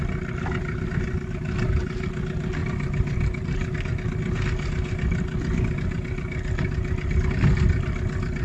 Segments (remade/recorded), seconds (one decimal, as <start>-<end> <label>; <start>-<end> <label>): 0.0-8.4 recorded